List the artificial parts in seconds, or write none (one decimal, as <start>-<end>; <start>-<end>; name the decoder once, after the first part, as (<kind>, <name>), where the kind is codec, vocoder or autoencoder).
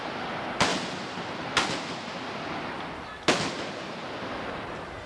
none